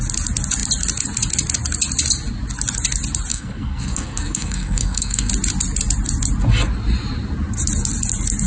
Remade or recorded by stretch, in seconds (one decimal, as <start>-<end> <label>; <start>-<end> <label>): 0.0-3.3 recorded; 3.3-5.3 remade; 5.3-8.5 recorded